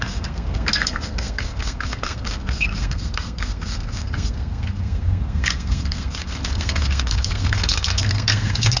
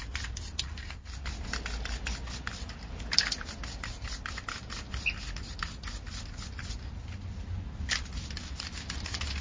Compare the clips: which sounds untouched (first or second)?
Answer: second